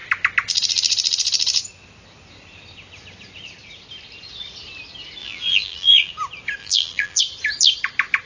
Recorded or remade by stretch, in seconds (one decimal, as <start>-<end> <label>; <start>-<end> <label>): 0.0-5.2 recorded; 5.2-6.1 remade; 6.1-6.6 recorded; 6.6-7.2 remade; 7.2-8.3 recorded

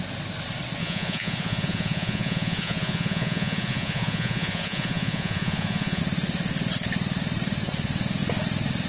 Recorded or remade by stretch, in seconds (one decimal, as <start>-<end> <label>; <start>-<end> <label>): 0.0-0.8 recorded; 0.8-6.0 remade; 6.0-8.9 recorded

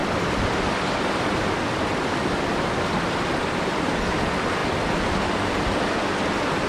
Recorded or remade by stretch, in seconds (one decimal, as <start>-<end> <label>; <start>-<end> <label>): 0.0-4.0 remade; 4.0-6.7 recorded